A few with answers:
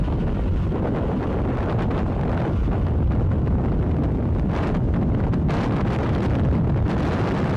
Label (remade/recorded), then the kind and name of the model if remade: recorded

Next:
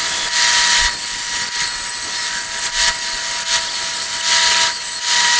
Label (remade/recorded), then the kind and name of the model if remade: recorded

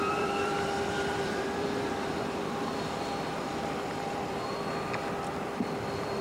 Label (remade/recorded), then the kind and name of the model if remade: remade, vocoder, BigVGAN v2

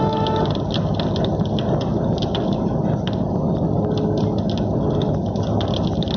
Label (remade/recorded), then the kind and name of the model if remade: recorded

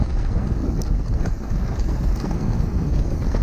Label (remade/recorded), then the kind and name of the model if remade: remade, codec, SNAC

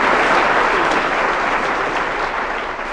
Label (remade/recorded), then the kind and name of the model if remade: recorded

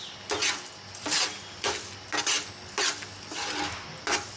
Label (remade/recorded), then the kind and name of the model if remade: recorded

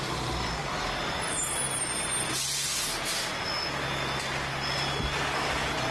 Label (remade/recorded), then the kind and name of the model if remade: recorded